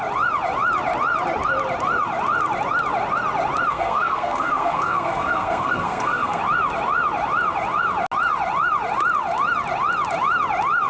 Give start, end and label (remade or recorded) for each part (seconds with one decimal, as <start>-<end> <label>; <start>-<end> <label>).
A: 0.0-3.7 recorded; 3.7-6.4 remade; 6.4-10.9 recorded